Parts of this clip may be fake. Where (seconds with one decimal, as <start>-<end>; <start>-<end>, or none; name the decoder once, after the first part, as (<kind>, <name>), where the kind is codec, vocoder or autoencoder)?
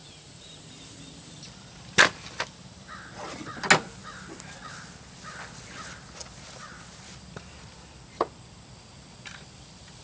0.0-0.6 (vocoder, Vocos)